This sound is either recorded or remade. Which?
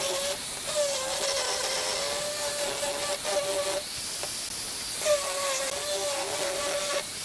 recorded